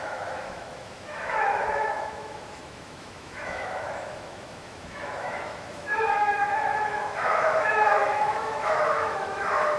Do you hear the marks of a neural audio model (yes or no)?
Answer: yes